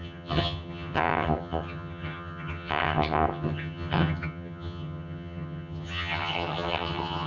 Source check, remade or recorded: remade